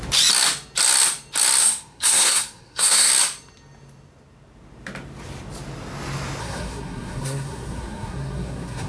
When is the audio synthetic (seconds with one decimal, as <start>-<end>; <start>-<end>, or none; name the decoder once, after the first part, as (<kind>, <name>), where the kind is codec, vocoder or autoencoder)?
1.6-3.1 (codec, SNAC); 6.4-8.9